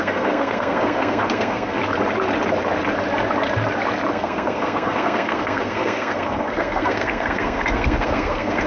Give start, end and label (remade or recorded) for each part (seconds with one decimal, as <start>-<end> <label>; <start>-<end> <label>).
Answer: 0.0-1.8 remade; 1.8-4.1 recorded; 4.1-8.7 remade